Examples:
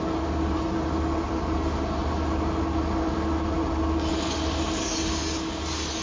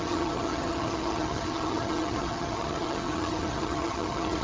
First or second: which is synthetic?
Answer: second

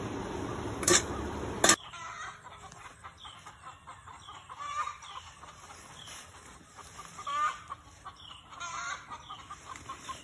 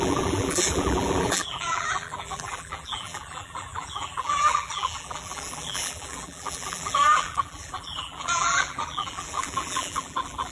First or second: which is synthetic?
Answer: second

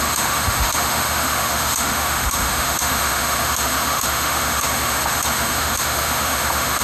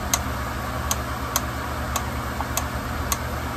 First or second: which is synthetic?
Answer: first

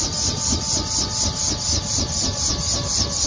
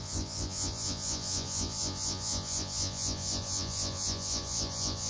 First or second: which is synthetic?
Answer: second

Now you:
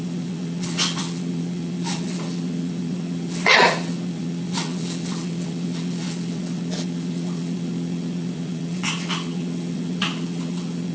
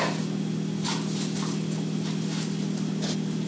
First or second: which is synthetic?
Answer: first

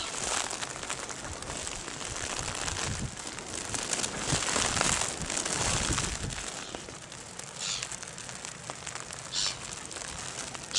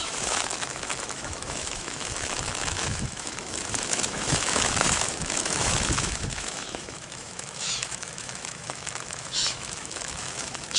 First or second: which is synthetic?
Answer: second